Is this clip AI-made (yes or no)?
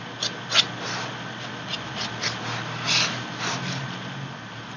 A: no